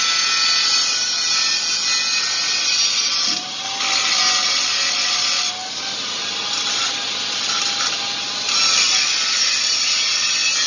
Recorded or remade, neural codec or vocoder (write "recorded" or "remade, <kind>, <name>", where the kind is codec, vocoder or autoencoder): recorded